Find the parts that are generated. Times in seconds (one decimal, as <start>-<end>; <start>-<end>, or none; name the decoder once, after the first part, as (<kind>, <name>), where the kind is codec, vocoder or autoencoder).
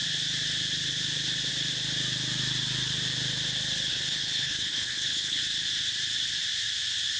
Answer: 3.9-5.4 (codec, HILCodec)